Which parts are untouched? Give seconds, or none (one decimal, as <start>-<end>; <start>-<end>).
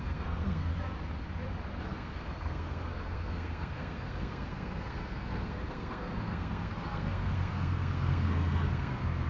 0.7-1.8